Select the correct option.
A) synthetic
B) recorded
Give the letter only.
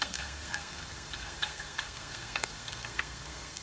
A